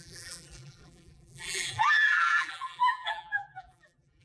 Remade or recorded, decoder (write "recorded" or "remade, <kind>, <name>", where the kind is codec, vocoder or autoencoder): remade, vocoder, BigVGAN v2